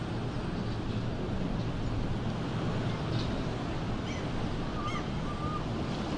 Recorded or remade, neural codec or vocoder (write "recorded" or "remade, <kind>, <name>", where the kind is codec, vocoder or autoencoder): recorded